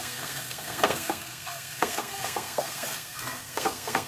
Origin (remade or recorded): remade